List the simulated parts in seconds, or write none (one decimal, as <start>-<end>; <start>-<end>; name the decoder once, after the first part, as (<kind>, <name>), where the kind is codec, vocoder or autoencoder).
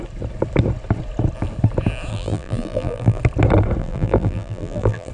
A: 2.1-3.2 (vocoder, BigVGAN v2); 3.8-5.1